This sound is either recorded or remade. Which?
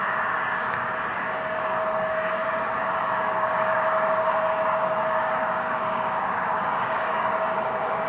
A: remade